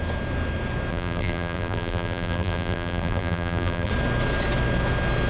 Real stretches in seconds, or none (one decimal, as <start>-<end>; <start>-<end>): 0.0-0.9; 3.9-5.3

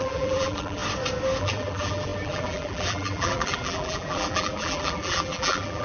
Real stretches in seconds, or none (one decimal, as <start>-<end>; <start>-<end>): 0.8-1.4

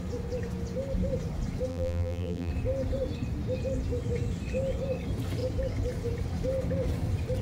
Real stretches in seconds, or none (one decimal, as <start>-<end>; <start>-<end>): 0.0-1.7; 2.5-7.4